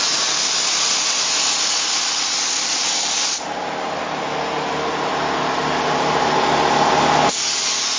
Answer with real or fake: real